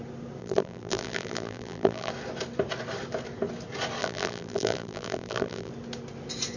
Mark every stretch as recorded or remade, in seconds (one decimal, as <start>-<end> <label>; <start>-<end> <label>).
0.0-0.4 recorded; 0.4-2.1 remade; 2.1-4.0 recorded; 4.0-5.7 remade; 5.7-6.6 recorded